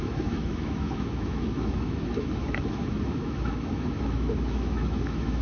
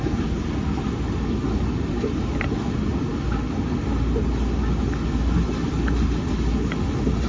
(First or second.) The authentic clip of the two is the second